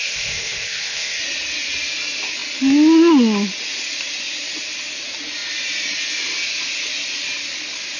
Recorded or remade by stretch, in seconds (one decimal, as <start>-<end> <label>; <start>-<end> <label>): 0.0-1.2 remade; 1.2-8.0 recorded